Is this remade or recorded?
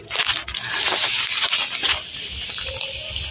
recorded